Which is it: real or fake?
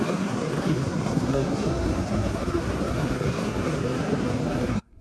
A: fake